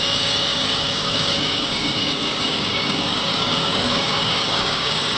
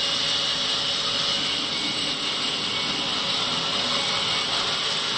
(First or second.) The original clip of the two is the second